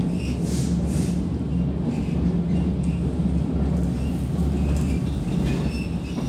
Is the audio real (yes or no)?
yes